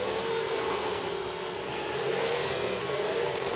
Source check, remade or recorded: remade